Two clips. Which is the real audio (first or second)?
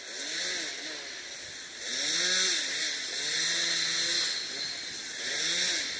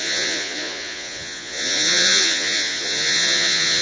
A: first